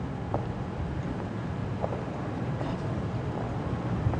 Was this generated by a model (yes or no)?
no